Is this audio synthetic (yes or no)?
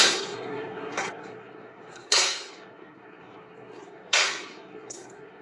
yes